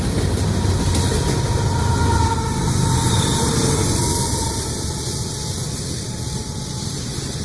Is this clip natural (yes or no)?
yes